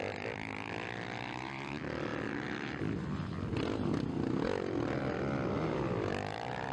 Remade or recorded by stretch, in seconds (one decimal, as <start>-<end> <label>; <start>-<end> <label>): 0.0-6.7 remade